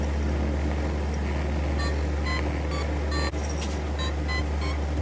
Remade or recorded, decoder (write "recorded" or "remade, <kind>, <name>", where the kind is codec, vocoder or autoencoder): recorded